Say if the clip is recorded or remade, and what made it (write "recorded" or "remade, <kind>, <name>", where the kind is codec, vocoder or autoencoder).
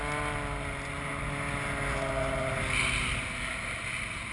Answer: recorded